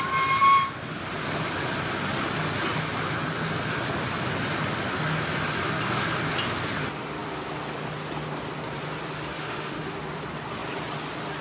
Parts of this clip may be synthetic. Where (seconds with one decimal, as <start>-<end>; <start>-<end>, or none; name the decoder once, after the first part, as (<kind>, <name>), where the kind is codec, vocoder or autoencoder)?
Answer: 9.3-9.9 (autoencoder, DAC-VAE)